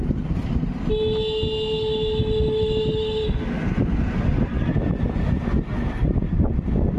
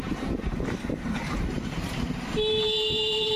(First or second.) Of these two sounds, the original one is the first